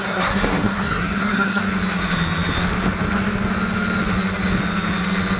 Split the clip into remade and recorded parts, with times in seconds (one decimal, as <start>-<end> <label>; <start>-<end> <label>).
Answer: 0.0-1.6 remade; 1.6-5.4 recorded